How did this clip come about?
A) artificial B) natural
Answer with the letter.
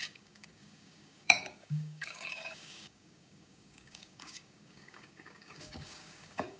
A